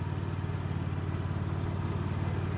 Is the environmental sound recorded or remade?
recorded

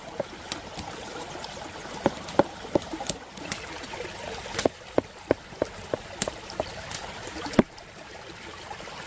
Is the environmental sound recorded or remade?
recorded